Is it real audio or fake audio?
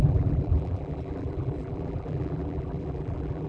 fake